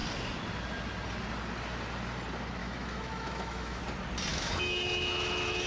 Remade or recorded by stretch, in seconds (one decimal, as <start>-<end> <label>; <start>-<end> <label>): 0.0-2.6 recorded; 2.6-3.8 remade; 3.8-4.3 recorded; 4.3-5.7 remade